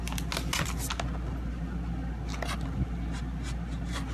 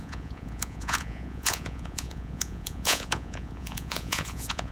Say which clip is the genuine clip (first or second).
first